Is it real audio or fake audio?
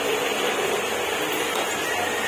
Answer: real